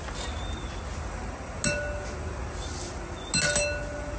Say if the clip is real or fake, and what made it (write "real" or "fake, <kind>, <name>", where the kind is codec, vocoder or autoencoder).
real